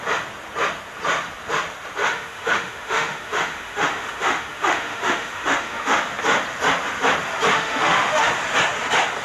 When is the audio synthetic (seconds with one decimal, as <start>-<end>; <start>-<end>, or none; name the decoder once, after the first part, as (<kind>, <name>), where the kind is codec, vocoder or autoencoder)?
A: 2.0-6.0 (autoencoder, DAC-VAE); 7.5-8.3